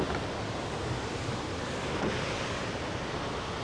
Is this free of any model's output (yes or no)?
yes